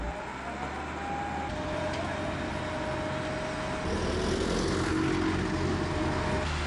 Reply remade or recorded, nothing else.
recorded